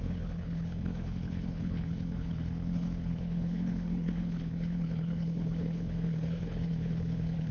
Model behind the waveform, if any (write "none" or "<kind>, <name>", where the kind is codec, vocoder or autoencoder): codec, HILCodec